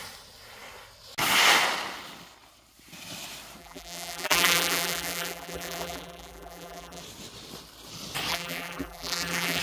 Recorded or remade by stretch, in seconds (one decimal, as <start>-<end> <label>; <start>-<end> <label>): 0.0-3.6 recorded; 3.6-7.0 remade; 7.0-8.3 recorded; 8.3-9.6 remade